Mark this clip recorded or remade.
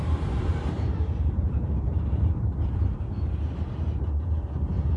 remade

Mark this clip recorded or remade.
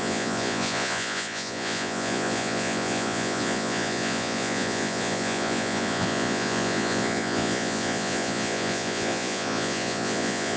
remade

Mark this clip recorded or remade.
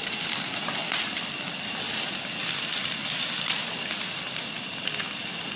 recorded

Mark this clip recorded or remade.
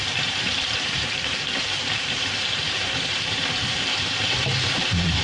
remade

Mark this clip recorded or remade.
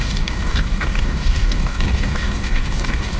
remade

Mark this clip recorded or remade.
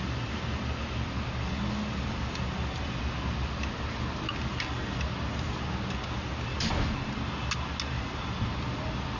recorded